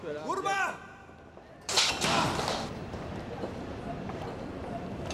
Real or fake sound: fake